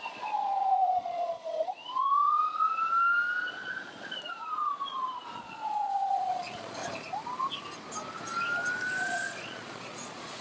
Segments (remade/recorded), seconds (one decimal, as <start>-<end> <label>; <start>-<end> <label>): 0.0-2.7 remade; 2.7-3.5 recorded; 3.5-6.8 remade; 6.8-9.0 recorded; 9.0-10.4 remade